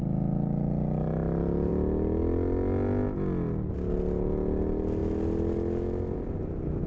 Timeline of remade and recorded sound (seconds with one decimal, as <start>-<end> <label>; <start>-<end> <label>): 0.0-6.9 recorded